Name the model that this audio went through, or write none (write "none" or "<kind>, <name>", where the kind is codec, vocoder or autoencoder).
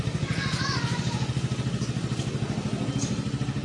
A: none